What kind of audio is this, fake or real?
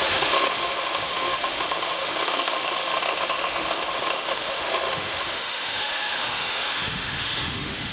fake